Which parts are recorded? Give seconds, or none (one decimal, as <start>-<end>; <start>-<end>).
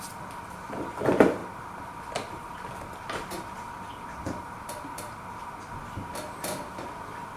0.0-7.4